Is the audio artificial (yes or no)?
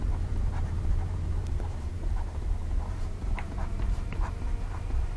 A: yes